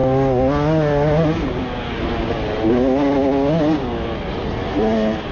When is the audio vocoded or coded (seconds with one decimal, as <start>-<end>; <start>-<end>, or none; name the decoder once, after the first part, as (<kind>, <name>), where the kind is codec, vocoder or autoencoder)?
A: none